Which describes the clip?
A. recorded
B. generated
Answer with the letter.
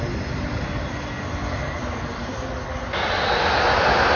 A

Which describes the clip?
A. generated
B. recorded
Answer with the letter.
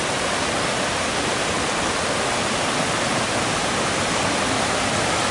B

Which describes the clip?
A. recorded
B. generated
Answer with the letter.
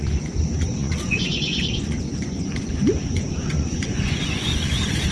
B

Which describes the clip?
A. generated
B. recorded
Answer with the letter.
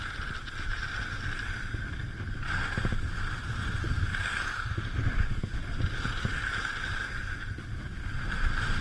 B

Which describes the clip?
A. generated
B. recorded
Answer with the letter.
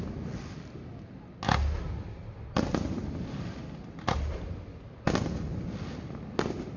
B